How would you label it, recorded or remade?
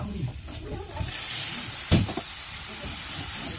recorded